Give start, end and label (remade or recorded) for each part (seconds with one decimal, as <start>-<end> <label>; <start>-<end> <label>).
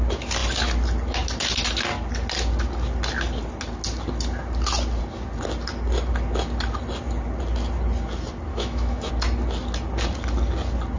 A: 0.0-8.5 recorded; 8.5-9.1 remade; 9.1-11.0 recorded